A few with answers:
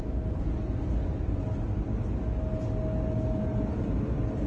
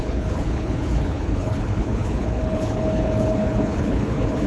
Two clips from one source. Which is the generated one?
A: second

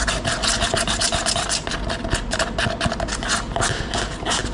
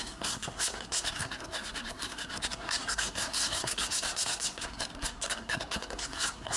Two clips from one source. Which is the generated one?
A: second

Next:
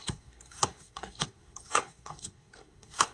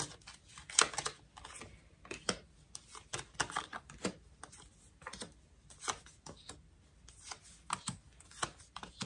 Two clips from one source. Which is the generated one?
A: first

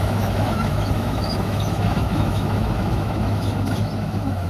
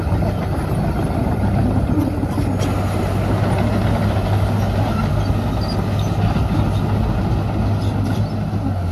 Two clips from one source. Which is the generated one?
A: first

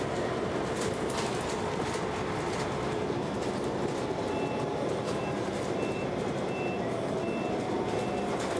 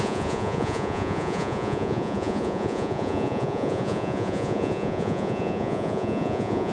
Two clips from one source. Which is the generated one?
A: second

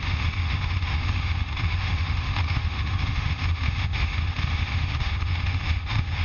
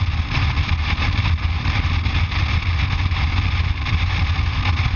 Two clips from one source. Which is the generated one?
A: first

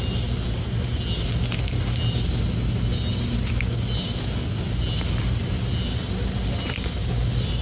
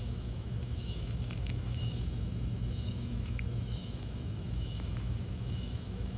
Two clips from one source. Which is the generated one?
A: second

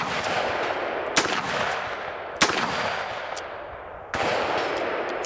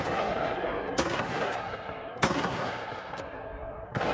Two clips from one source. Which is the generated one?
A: second